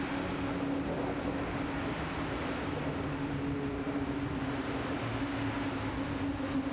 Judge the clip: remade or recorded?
recorded